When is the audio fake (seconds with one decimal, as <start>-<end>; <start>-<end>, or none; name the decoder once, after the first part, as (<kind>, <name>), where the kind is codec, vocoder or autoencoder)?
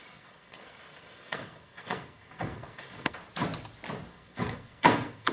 0.0-3.2 (codec, SNAC); 4.1-5.3